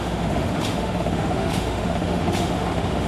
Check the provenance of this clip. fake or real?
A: fake